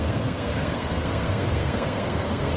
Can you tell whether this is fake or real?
fake